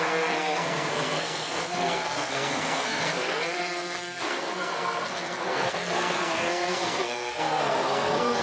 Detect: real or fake fake